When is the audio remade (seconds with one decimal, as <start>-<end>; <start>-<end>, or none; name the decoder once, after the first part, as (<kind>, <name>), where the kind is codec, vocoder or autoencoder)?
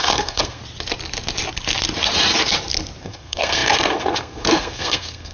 0.0-0.6 (codec, SNAC); 3.0-5.3